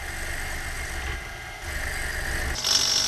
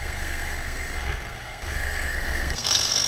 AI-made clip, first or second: second